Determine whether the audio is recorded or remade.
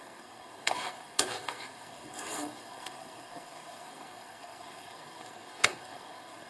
remade